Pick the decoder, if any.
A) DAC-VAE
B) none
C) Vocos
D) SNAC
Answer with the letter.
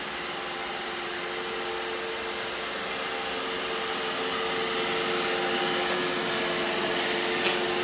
B